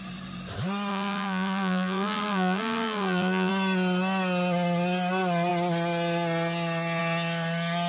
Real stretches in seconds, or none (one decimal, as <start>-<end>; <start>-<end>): 0.0-0.9; 3.5-7.9